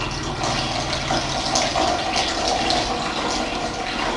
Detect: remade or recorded recorded